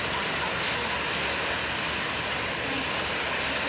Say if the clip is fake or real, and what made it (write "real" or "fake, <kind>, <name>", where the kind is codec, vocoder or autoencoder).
real